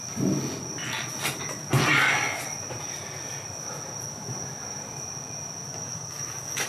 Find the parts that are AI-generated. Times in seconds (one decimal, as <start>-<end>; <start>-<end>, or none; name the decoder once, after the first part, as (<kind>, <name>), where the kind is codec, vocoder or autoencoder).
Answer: 5.7-6.7 (codec, DAC)